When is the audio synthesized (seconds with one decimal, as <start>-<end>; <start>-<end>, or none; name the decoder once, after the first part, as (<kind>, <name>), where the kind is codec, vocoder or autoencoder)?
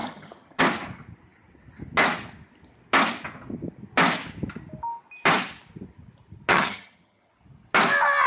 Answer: 0.0-0.6 (vocoder, HiFi-GAN); 6.5-7.3